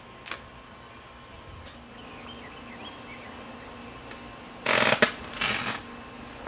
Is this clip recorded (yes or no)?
yes